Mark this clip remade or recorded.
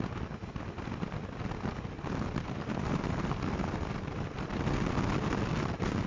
recorded